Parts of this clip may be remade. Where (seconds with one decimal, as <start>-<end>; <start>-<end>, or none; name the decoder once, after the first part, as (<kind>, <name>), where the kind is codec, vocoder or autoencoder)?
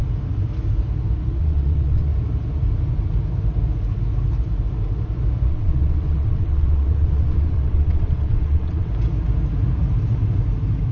1.4-2.1 (vocoder, WaveNeXt); 5.5-8.9